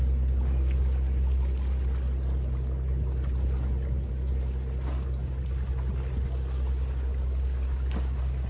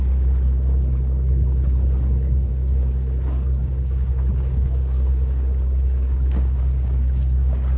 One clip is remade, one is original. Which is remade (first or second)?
second